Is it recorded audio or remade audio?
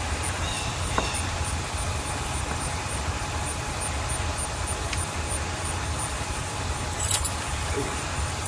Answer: recorded